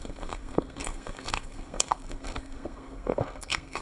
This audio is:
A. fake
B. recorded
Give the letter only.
A